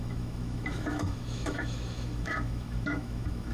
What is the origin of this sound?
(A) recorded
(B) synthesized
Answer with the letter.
B